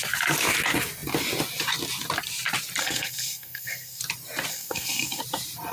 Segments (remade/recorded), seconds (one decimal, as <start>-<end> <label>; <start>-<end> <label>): 0.0-2.8 recorded; 2.8-4.0 remade; 4.0-4.5 recorded; 4.5-5.2 remade; 5.2-5.7 recorded